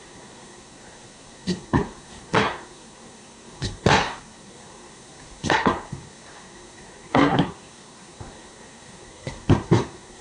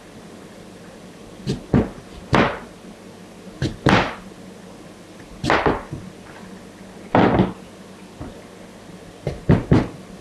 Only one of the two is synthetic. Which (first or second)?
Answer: first